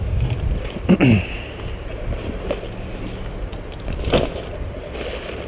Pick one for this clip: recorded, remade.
recorded